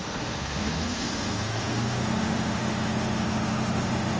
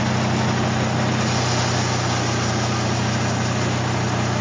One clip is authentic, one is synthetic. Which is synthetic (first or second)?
first